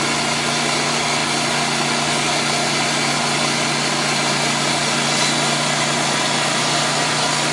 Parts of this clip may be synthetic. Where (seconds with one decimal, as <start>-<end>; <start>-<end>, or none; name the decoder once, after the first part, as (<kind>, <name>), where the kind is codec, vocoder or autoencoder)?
none